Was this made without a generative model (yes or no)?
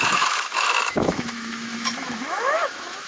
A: no